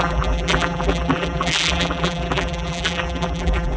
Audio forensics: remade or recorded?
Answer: remade